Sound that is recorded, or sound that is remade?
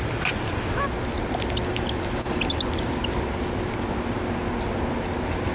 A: recorded